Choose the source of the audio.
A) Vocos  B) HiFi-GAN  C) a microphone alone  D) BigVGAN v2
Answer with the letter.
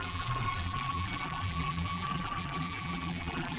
D